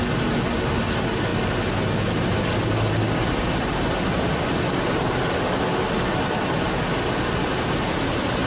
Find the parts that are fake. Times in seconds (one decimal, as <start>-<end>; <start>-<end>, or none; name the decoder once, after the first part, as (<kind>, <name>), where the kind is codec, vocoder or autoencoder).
none